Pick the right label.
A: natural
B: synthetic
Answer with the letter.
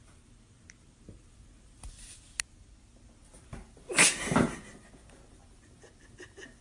A